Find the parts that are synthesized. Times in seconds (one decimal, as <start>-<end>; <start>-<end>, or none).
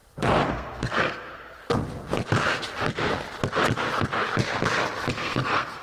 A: 0.5-1.6; 5.1-5.8